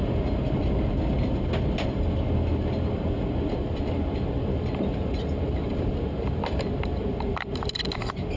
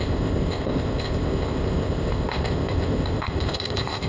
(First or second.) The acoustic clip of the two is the first